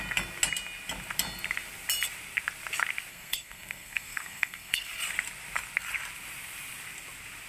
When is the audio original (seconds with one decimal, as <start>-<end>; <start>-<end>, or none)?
0.0-3.1; 4.9-7.5